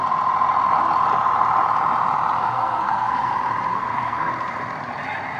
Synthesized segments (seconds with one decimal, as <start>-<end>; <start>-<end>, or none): 2.4-3.3; 3.7-4.3